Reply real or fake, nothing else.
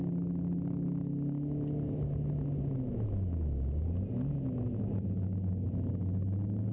real